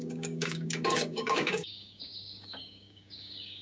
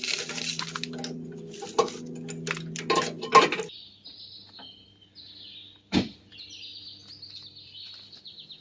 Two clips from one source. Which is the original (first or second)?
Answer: second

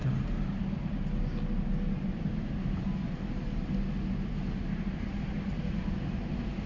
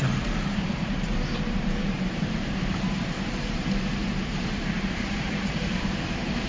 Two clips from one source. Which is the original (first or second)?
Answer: first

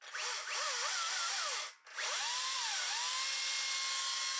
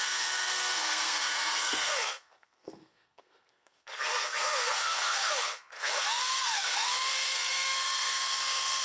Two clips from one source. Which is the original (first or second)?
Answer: first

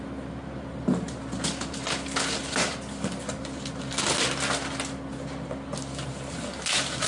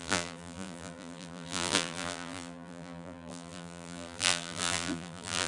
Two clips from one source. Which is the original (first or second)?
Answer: first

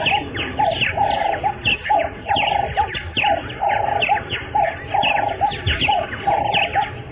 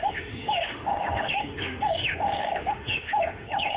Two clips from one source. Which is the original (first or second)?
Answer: first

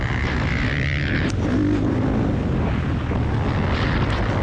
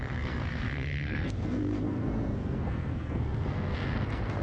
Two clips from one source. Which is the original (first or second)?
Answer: first